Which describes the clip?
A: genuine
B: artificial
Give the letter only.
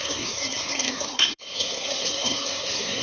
B